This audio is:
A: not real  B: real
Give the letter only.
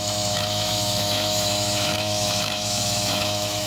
A